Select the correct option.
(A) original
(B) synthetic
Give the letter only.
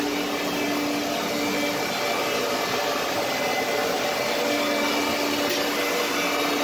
A